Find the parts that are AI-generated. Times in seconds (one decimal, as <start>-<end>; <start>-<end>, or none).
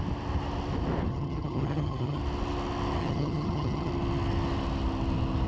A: 1.1-2.2; 3.0-3.9